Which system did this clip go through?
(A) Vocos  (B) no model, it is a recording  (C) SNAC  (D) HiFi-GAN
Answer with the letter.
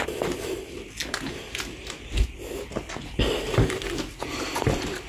B